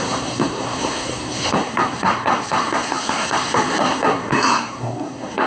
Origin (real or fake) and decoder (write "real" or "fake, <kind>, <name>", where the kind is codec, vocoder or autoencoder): fake, codec, SNAC